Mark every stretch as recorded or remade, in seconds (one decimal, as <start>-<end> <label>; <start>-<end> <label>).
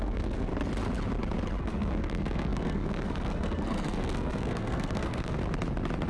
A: 0.0-0.5 remade; 0.5-1.6 recorded; 1.6-5.4 remade; 5.4-6.1 recorded